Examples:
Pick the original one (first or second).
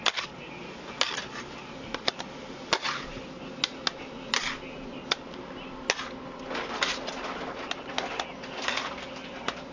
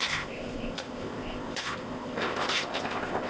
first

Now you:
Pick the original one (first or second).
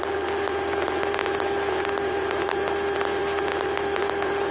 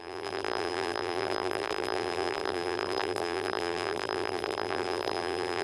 first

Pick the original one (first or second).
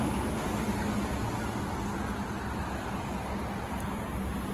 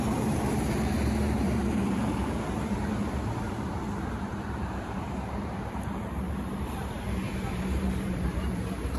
first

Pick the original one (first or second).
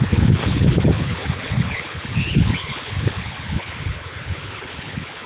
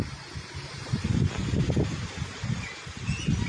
second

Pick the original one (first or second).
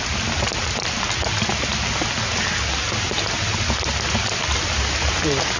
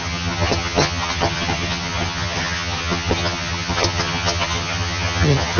first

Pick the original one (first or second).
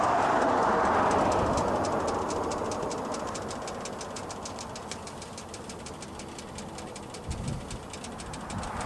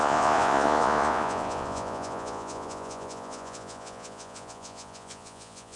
first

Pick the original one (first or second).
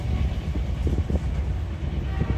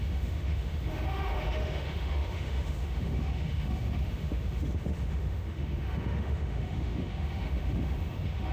first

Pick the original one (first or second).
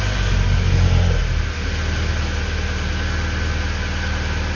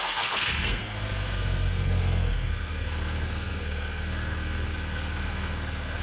first